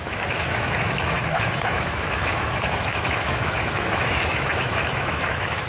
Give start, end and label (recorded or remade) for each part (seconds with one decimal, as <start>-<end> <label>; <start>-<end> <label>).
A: 0.0-5.7 remade